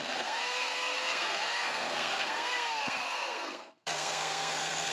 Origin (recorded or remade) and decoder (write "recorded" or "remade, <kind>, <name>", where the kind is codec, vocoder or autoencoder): remade, codec, SNAC